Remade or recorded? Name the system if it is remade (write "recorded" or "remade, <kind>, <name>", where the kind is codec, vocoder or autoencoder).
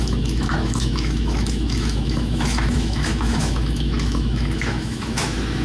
remade, autoencoder, DAC-VAE